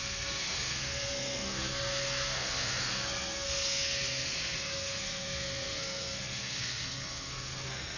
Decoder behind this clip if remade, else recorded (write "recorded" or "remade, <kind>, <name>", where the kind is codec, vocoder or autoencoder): remade, codec, SNAC